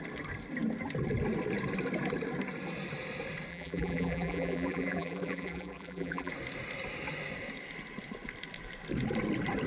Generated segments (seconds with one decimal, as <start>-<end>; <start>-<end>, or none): 3.5-6.3